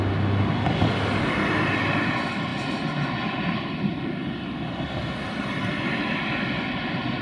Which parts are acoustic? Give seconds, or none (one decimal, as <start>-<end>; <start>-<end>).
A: 0.0-7.2